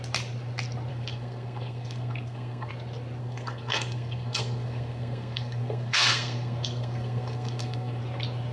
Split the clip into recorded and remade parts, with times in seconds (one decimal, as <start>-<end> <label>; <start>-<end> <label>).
0.0-0.9 recorded; 0.9-2.7 remade; 2.7-3.2 recorded; 3.2-8.0 remade; 8.0-8.5 recorded

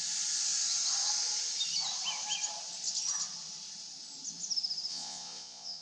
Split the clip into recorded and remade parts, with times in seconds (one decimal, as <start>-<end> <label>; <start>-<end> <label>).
0.0-4.9 recorded; 4.9-5.8 remade

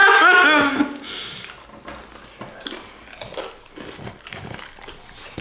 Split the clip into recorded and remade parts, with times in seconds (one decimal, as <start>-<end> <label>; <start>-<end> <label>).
0.0-0.8 remade; 0.8-5.4 recorded

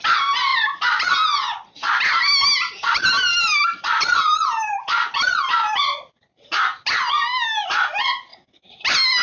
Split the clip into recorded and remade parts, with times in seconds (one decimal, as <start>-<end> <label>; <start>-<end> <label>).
0.0-9.2 recorded